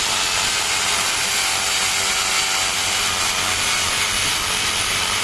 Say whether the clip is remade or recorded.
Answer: recorded